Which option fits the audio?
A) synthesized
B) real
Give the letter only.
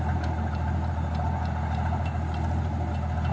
B